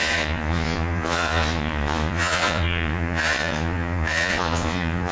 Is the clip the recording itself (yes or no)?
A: no